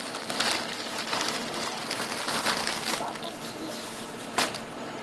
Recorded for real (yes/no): yes